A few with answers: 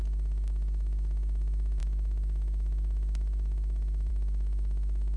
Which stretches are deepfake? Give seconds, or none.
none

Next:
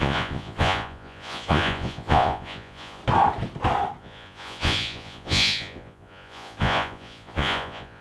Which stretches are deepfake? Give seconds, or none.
0.0-3.0 (vocoder, Vocos); 4.0-8.0

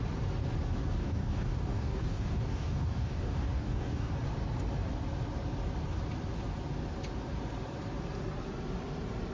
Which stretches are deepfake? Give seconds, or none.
1.0-4.1 (codec, DAC)

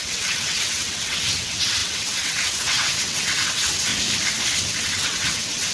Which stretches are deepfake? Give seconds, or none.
0.0-3.9 (vocoder, WaveNeXt); 4.6-5.7

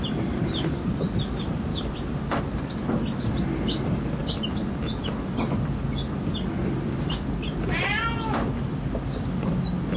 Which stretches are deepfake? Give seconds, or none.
none

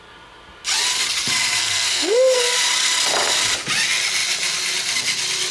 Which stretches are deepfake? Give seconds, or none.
1.6-2.6 (codec, SNAC)

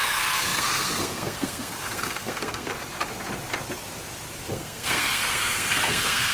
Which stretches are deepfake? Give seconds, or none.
0.0-2.7 (codec, SNAC); 4.5-6.3

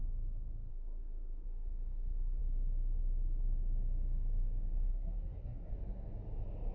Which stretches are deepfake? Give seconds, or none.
0.7-2.4 (codec, SNAC); 4.9-5.7